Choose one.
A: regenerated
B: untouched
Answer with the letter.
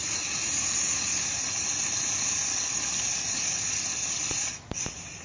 B